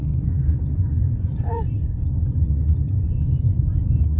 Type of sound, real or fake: fake